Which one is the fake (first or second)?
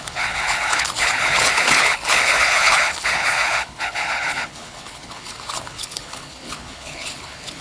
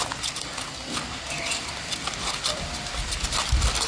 first